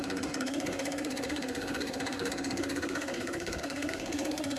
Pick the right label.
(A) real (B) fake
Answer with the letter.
B